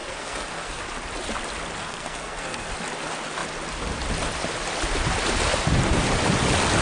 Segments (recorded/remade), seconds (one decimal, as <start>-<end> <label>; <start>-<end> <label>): 0.0-0.8 remade; 0.8-1.8 recorded; 1.8-2.7 remade; 2.7-6.8 recorded